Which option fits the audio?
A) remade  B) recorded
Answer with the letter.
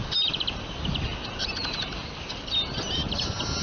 B